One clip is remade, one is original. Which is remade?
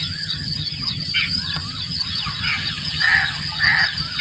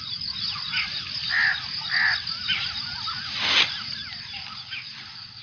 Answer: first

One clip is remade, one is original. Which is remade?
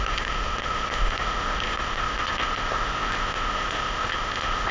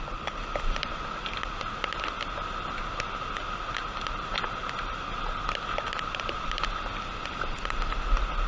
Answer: first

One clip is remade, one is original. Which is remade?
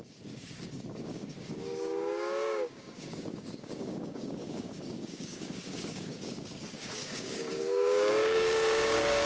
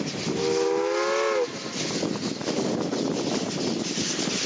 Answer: first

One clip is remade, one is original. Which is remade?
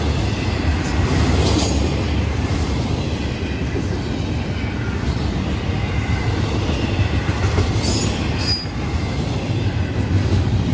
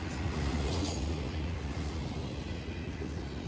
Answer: second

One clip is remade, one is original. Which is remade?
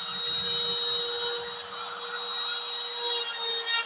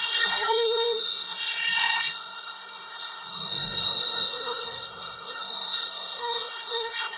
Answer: second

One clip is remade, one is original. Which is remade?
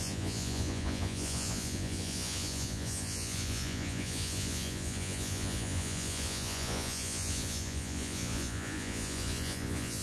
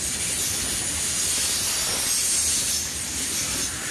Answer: first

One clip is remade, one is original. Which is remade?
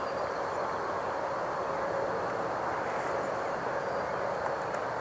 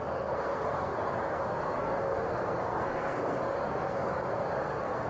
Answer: second